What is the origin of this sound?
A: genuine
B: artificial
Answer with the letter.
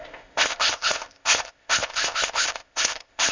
B